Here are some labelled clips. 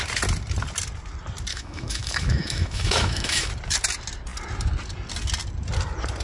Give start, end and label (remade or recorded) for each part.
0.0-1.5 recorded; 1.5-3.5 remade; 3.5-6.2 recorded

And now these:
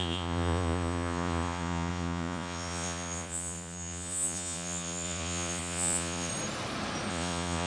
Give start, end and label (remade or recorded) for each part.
0.0-6.3 remade; 6.3-7.1 recorded; 7.1-7.7 remade